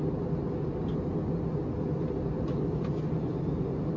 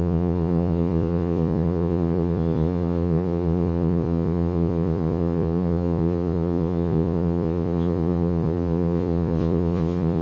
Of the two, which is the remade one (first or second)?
second